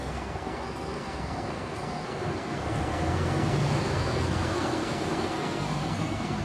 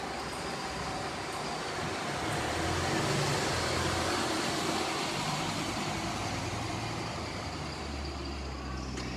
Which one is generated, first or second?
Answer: first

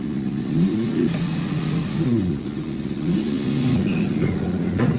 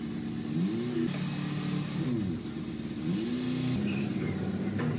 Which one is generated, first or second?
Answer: first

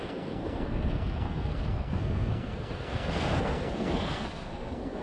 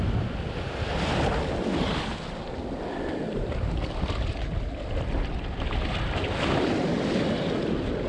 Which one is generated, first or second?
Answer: first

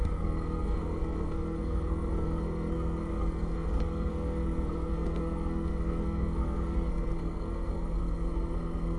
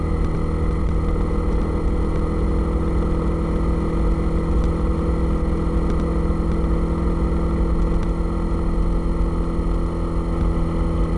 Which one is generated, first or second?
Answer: first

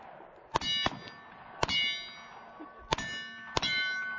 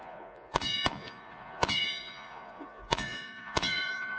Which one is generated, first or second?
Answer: second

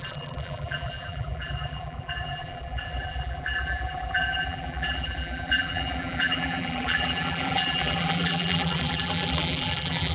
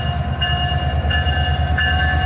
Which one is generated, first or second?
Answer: first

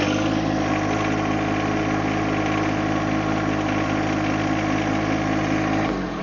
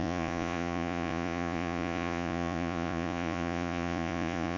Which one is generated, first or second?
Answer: second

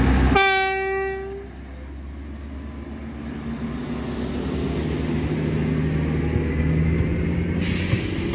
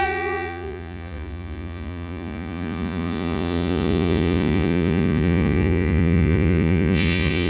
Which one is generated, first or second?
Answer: second